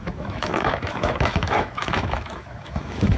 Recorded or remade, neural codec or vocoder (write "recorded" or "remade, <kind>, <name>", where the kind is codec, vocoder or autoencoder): remade, autoencoder, DAC-VAE